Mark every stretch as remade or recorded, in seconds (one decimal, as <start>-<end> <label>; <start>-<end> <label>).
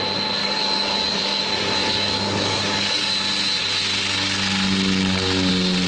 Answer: 0.0-0.4 recorded; 0.4-1.4 remade; 1.4-1.8 recorded; 1.8-3.1 remade; 3.1-5.9 recorded